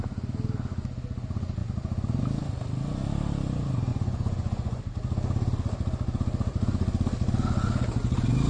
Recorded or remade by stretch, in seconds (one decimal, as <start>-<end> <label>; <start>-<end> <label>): 0.0-3.9 recorded; 3.9-4.8 remade; 4.8-8.5 recorded